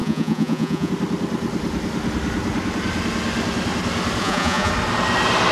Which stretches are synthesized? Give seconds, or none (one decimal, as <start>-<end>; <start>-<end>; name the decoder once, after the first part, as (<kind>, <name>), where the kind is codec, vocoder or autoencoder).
0.0-0.9 (vocoder, Vocos); 4.2-4.7